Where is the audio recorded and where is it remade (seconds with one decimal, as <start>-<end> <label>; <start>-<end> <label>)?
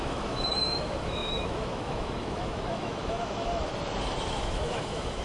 0.0-3.7 remade; 3.7-4.2 recorded; 4.2-5.2 remade